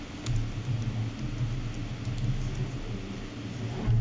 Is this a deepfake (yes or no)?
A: no